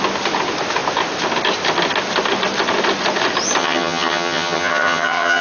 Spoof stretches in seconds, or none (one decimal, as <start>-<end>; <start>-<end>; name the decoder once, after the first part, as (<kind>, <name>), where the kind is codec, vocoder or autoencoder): 3.6-5.4 (vocoder, HiFi-GAN)